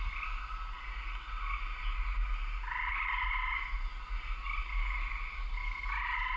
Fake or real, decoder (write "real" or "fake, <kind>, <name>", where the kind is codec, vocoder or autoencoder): real